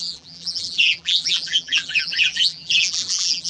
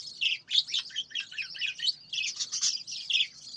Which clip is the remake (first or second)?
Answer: first